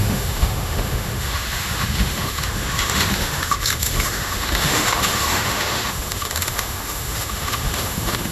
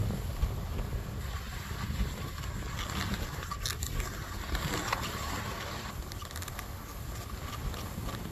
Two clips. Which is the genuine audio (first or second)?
second